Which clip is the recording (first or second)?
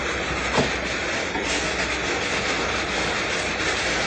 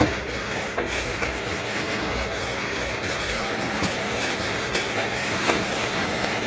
first